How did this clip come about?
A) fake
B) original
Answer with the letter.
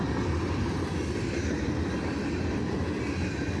B